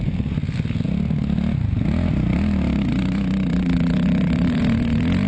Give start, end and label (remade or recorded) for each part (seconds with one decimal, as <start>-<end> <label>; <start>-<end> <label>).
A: 0.0-3.5 recorded; 3.5-4.6 remade; 4.6-5.3 recorded